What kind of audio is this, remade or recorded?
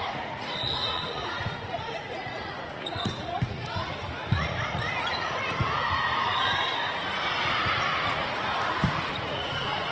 remade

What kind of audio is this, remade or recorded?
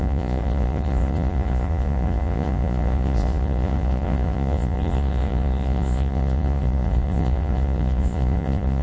remade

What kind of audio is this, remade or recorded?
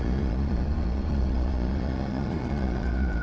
remade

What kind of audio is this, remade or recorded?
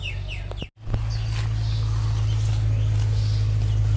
recorded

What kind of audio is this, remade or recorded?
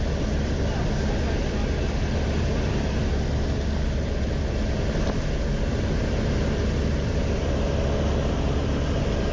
recorded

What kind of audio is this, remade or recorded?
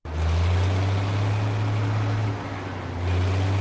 recorded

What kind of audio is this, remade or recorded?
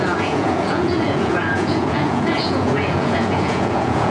remade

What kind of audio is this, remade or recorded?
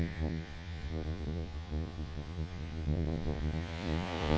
remade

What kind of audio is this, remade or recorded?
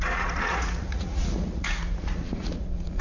remade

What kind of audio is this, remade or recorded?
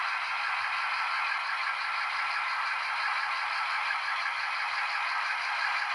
recorded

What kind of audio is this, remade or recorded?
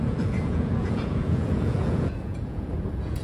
remade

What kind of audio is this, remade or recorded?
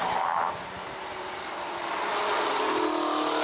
recorded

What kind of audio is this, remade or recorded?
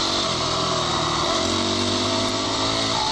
recorded